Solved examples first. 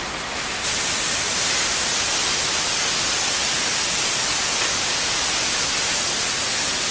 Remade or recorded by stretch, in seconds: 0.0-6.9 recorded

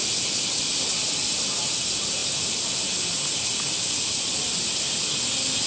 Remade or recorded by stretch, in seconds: 0.0-5.7 recorded

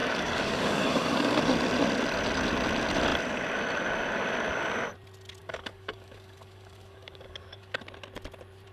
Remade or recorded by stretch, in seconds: 0.0-1.4 remade; 1.4-5.4 recorded; 5.4-7.8 remade; 7.8-8.7 recorded

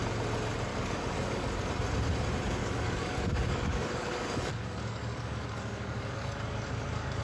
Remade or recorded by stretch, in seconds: 0.0-0.7 recorded; 0.7-1.7 remade; 1.7-2.6 recorded; 2.6-7.2 remade

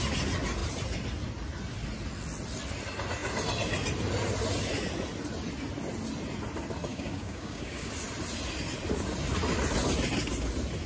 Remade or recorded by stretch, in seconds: 0.0-6.9 recorded; 6.9-7.9 remade; 7.9-10.9 recorded

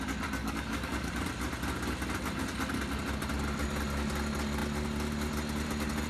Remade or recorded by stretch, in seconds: 0.0-0.4 recorded; 0.4-1.1 remade; 1.1-6.1 recorded

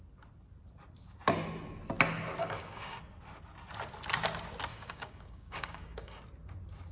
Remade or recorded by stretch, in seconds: 0.0-2.4 recorded; 2.4-3.0 remade; 3.0-4.7 recorded; 4.7-6.2 remade; 6.2-6.9 recorded